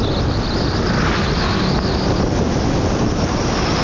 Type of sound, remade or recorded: recorded